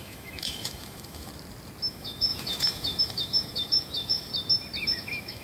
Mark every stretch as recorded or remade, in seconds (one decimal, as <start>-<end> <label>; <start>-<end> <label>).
0.0-1.3 remade; 1.3-1.9 recorded; 1.9-4.3 remade; 4.3-4.8 recorded; 4.8-5.4 remade